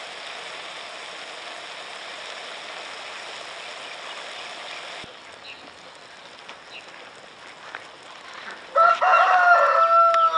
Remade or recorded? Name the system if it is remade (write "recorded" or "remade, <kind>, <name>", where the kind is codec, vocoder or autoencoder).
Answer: recorded